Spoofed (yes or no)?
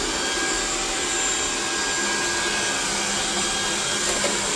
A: no